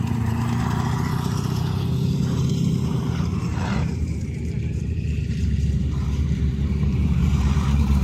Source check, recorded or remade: remade